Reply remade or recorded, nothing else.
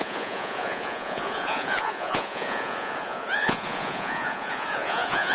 remade